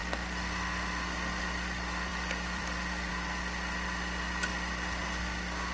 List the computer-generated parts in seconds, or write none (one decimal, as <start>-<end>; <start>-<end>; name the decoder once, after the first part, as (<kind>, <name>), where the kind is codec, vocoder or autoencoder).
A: 2.1-3.1 (vocoder, BigVGAN v2)